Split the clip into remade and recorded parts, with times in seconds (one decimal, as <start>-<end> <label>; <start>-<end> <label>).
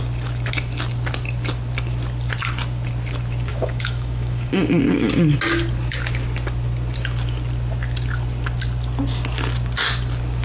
0.0-3.5 recorded; 3.5-4.5 remade; 4.5-10.4 recorded